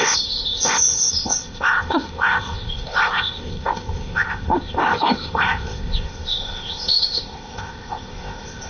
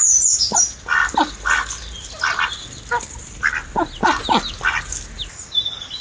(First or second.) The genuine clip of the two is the second